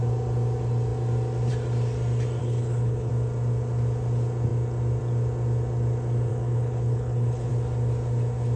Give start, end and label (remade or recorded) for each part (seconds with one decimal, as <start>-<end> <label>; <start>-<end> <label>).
0.0-2.4 recorded; 2.4-3.1 remade; 3.1-6.3 recorded; 6.3-7.5 remade; 7.5-8.6 recorded